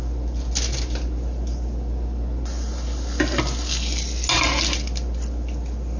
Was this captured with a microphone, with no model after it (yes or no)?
yes